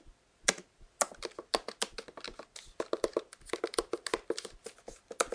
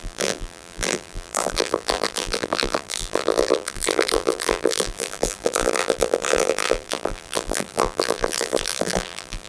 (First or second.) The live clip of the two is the first